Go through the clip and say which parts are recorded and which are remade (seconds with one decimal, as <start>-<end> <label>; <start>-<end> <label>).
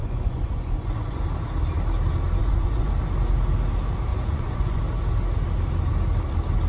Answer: 0.0-1.3 remade; 1.3-2.4 recorded; 2.4-2.9 remade; 2.9-4.1 recorded; 4.1-4.8 remade; 4.8-6.7 recorded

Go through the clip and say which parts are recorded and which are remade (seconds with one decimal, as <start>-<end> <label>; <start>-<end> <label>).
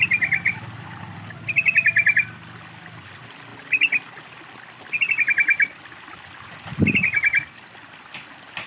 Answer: 0.0-8.7 recorded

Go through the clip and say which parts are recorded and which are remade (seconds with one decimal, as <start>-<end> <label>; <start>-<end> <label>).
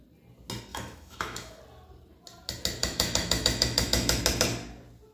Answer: 0.0-0.7 recorded; 0.7-1.6 remade; 1.6-2.8 recorded; 2.8-4.2 remade; 4.2-5.1 recorded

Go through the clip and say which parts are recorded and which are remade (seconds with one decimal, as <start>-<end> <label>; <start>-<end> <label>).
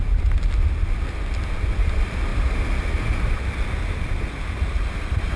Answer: 0.0-5.4 recorded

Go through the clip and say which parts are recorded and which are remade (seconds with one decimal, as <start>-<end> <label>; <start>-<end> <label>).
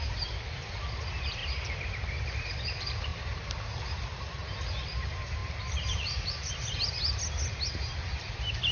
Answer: 0.0-1.4 remade; 1.4-2.2 recorded; 2.2-3.1 remade; 3.1-3.8 recorded; 3.8-4.4 remade; 4.4-5.0 recorded; 5.0-8.7 remade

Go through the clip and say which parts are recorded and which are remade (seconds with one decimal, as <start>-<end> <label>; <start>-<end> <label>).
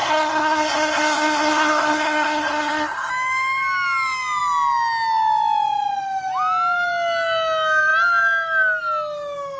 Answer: 0.0-3.1 remade; 3.1-9.6 recorded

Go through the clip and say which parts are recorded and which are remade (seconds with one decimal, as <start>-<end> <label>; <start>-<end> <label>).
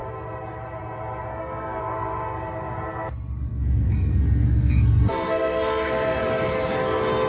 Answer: 0.0-1.3 recorded; 1.3-1.8 remade; 1.8-3.5 recorded; 3.5-6.2 remade; 6.2-7.3 recorded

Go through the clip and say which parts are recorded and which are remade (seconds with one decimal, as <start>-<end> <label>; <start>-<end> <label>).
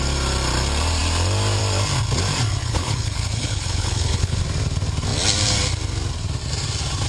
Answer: 0.0-2.6 recorded; 2.6-4.4 remade; 4.4-7.1 recorded